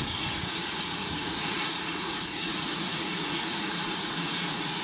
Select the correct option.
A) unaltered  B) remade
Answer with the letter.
B